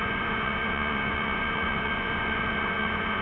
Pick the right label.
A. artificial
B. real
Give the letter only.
A